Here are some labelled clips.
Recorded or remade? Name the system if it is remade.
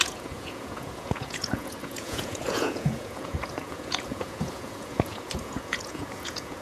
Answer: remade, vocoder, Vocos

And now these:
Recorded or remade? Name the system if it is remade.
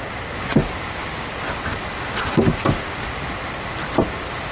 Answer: recorded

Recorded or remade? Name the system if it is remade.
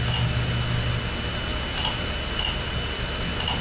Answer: recorded